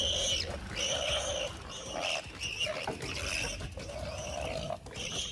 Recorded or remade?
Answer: recorded